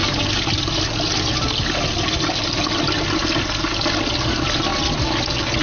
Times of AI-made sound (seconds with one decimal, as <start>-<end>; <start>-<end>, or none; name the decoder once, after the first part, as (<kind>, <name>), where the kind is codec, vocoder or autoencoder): none